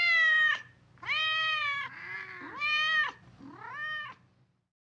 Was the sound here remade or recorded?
recorded